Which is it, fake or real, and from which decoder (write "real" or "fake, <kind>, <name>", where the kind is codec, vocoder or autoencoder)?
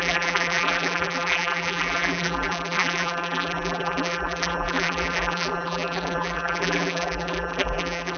fake, vocoder, BigVGAN v2